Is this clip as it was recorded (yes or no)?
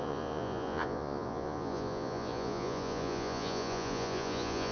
no